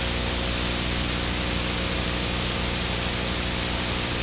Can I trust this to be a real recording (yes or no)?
yes